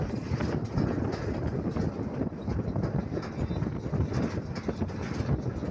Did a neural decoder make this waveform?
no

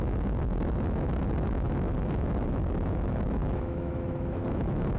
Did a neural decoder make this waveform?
yes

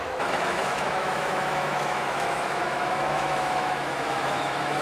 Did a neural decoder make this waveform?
yes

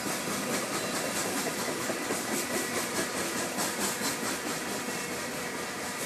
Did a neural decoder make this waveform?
no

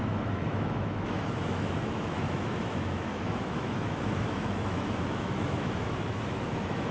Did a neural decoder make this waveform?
yes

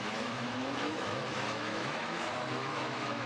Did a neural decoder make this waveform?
yes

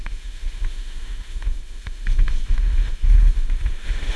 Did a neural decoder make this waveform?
yes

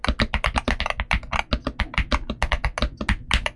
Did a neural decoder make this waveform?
no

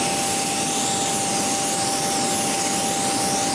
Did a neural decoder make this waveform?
no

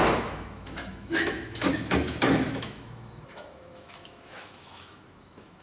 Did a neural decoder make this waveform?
yes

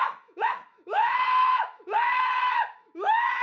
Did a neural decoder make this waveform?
yes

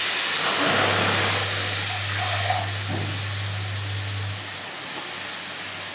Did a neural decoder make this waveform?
no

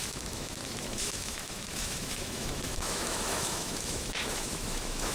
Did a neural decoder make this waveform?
yes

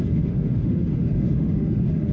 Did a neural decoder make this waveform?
yes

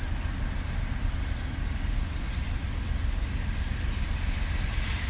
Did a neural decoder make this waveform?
no